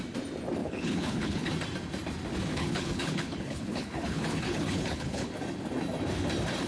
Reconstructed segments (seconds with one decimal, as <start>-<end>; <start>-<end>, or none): 0.6-1.5; 2.5-5.3